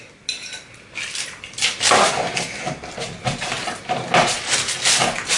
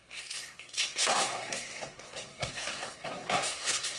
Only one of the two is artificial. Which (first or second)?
second